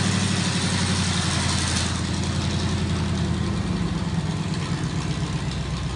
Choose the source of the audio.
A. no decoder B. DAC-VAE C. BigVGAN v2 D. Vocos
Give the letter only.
A